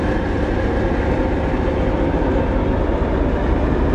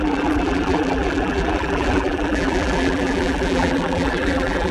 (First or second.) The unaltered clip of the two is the first